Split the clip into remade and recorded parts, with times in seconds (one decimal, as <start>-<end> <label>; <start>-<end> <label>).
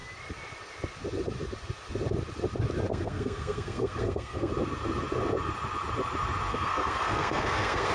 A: 0.0-2.9 recorded; 2.9-4.5 remade; 4.5-6.5 recorded; 6.5-7.9 remade